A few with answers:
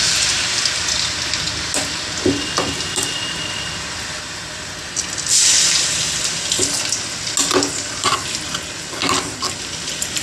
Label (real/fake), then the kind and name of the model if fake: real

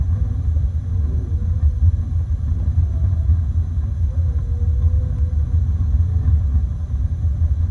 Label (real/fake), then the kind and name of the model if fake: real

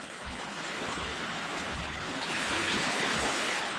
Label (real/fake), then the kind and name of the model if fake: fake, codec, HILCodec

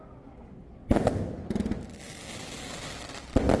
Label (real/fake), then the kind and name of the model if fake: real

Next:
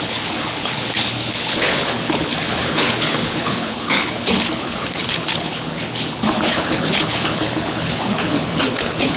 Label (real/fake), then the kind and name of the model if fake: fake, codec, HILCodec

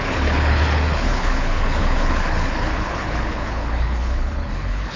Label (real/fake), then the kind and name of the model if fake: fake, codec, HILCodec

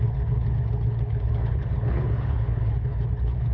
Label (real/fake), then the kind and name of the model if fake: fake, codec, HILCodec